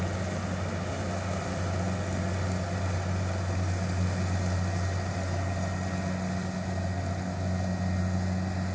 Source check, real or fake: real